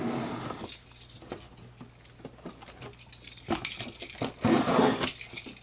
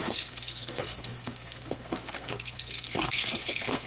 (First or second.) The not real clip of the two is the second